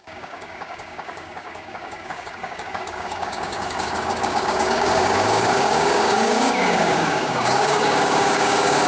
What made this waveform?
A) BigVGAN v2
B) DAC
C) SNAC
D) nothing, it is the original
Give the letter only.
B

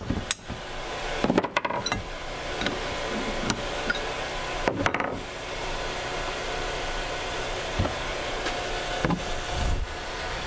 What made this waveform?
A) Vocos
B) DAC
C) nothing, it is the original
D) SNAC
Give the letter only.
C